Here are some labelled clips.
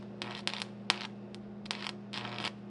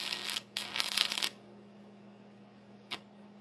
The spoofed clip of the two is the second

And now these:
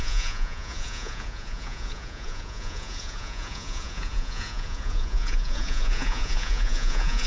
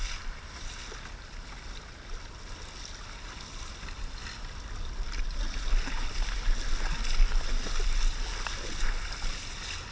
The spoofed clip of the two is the first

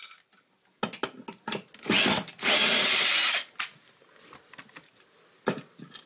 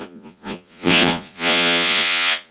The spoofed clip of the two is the second